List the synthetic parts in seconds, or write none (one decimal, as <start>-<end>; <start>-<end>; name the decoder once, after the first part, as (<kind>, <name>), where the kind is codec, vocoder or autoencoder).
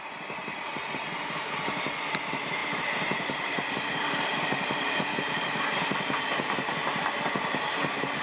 none